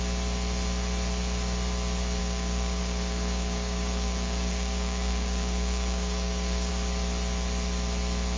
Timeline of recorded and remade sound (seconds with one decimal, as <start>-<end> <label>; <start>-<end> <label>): 0.0-2.2 recorded; 2.2-6.7 remade; 6.7-8.4 recorded